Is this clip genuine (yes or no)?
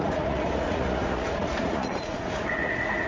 no